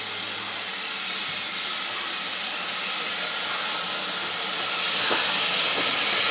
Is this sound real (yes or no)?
yes